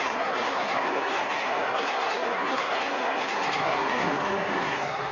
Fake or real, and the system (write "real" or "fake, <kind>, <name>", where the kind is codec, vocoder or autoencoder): fake, codec, SNAC